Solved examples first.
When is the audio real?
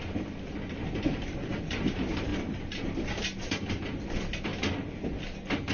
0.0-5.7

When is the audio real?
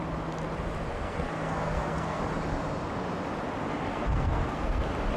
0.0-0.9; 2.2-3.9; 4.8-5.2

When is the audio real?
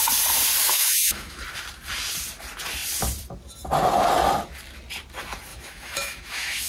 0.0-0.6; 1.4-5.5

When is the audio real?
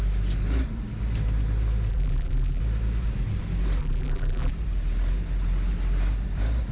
0.0-1.9; 2.6-3.8; 4.5-6.7